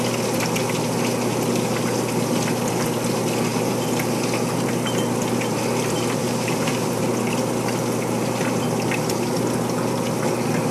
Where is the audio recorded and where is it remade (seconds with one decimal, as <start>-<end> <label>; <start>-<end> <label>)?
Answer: 0.0-6.2 recorded; 6.2-7.0 remade; 7.0-10.7 recorded